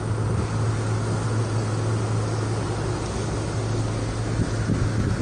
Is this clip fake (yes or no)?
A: no